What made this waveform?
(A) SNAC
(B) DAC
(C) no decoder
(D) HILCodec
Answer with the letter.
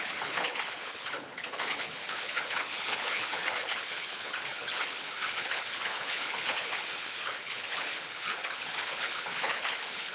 D